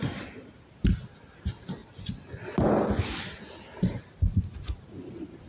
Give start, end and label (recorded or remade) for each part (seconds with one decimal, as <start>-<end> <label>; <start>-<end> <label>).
0.0-5.5 recorded